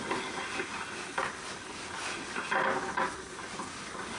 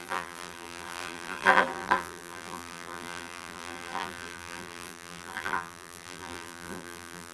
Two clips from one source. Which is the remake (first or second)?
second